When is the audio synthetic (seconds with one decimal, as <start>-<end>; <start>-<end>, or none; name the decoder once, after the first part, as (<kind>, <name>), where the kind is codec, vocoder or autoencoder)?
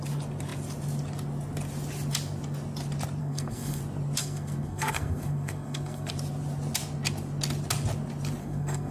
3.2-3.8 (codec, SNAC); 4.2-6.1; 8.4-8.9